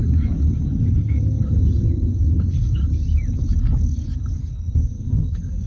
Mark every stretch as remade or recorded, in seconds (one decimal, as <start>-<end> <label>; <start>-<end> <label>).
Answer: 0.0-0.7 recorded; 0.7-1.4 remade; 1.4-2.1 recorded; 2.1-2.8 remade; 2.8-4.4 recorded; 4.4-5.7 remade